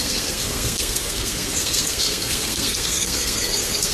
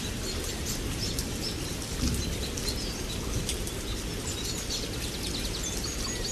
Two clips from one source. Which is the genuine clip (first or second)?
second